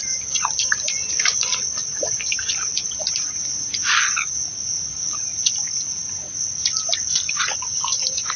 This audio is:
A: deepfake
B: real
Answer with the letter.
A